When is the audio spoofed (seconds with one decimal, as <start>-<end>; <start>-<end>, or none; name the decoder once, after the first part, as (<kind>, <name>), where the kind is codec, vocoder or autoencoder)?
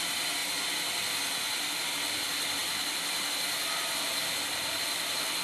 none